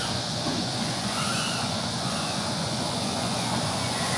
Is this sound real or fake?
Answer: fake